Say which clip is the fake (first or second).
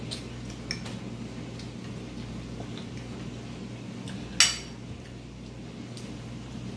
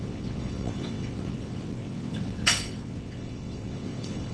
second